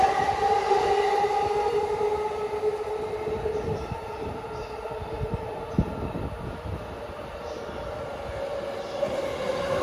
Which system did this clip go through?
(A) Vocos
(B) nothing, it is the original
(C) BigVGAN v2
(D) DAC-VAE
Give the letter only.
B